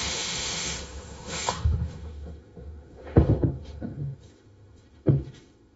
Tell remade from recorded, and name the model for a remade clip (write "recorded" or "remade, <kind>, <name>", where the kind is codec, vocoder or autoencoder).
remade, autoencoder, DAC-VAE